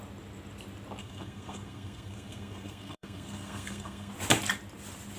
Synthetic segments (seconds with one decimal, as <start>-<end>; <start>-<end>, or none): 1.0-4.1